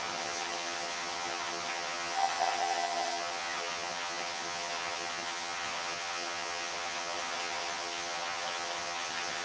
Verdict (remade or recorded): remade